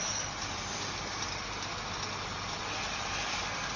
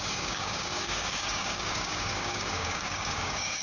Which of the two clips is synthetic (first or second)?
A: second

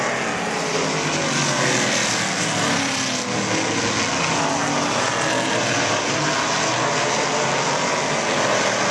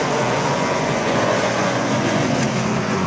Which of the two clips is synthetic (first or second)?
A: second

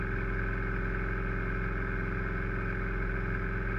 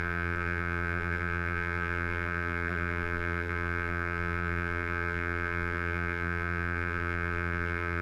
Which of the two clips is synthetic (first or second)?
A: second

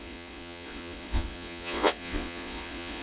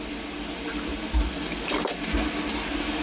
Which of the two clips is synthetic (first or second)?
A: first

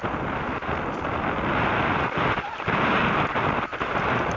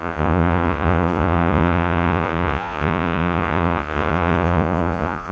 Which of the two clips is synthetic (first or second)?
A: second